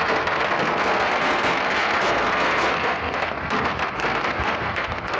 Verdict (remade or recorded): remade